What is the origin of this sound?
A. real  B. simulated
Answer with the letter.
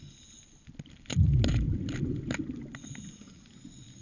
A